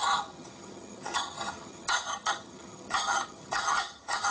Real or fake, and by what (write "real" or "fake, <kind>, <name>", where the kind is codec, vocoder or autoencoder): fake, vocoder, HiFi-GAN